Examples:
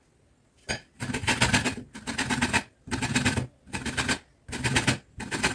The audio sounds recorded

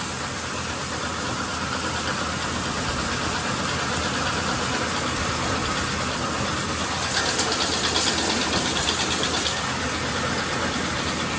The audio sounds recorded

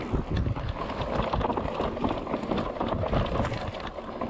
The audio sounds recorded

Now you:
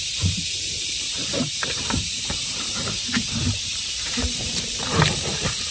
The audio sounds remade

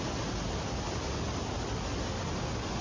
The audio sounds recorded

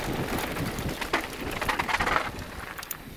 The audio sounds remade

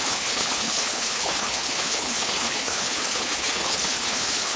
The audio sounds remade